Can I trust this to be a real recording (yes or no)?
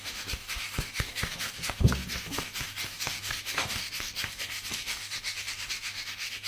no